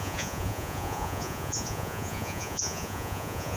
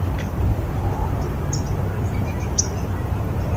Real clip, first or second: second